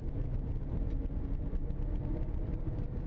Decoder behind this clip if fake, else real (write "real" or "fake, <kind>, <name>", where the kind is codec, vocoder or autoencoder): real